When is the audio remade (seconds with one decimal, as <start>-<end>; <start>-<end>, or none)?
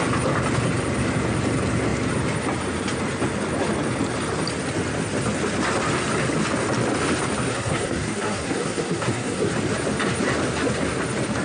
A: 7.5-9.5